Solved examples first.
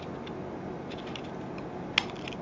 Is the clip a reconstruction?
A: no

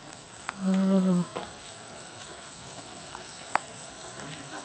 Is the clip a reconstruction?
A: yes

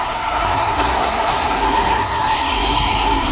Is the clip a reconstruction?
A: yes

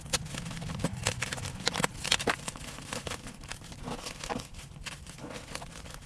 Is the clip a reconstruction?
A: no